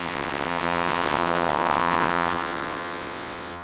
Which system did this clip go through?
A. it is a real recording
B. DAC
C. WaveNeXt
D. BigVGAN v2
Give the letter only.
C